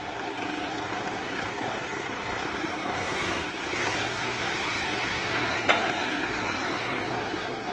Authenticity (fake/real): fake